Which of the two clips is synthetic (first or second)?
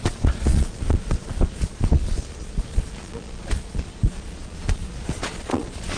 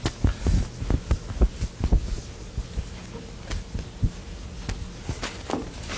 first